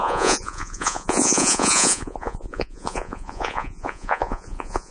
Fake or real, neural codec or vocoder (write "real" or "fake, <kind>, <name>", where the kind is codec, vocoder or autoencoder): fake, vocoder, Vocos